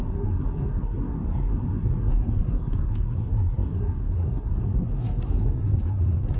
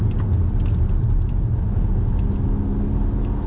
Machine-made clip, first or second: first